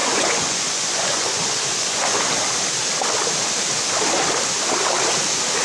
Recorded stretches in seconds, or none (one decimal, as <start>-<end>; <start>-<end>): 2.3-5.6